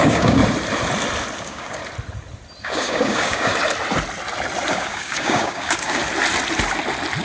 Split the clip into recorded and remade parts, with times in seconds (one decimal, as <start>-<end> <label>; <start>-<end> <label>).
0.0-0.4 remade; 0.4-1.4 recorded; 1.4-1.8 remade; 1.8-2.6 recorded; 2.6-3.5 remade; 3.5-4.7 recorded; 4.7-6.0 remade; 6.0-7.2 recorded